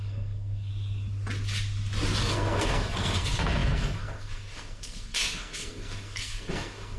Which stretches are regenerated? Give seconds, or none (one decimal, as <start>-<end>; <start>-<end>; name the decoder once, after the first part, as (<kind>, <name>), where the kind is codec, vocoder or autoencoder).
0.0-0.7 (codec, SNAC); 2.2-7.0